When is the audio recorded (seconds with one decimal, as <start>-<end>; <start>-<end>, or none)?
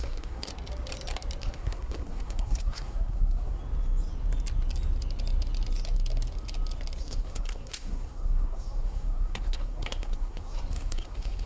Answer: 0.5-1.4; 3.6-7.0